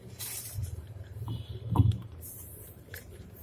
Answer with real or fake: fake